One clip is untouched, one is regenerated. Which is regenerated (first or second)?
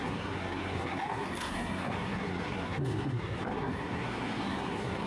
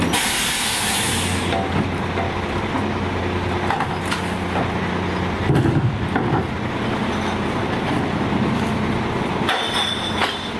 first